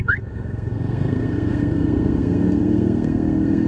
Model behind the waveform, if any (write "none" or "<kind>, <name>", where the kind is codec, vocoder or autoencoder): codec, SNAC